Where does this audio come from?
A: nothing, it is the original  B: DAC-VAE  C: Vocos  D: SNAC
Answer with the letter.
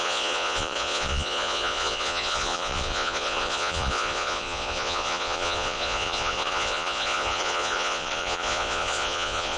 C